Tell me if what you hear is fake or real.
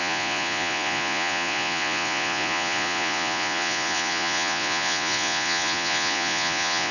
fake